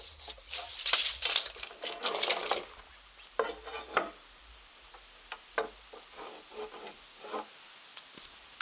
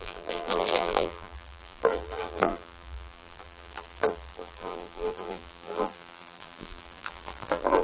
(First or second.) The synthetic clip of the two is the second